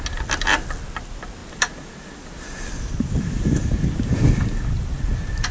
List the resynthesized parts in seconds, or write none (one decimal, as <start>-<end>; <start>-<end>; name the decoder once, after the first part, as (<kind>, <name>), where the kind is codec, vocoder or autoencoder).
none